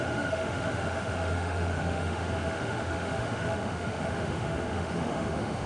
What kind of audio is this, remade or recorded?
remade